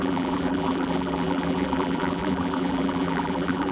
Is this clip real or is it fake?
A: fake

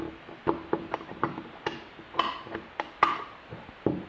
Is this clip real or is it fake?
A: real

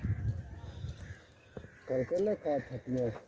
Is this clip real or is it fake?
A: real